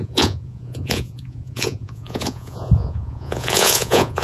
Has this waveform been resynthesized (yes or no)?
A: yes